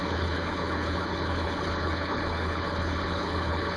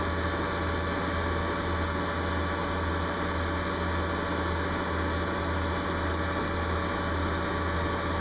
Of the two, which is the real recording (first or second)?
second